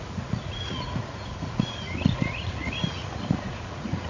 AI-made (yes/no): yes